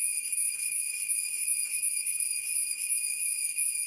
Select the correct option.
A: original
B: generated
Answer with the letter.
B